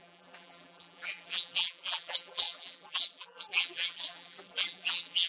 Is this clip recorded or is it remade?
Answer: remade